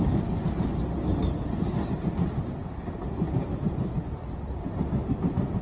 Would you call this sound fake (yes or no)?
no